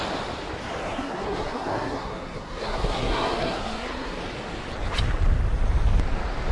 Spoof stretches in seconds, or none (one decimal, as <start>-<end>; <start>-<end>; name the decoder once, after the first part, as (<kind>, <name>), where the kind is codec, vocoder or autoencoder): 0.8-4.2 (codec, SNAC)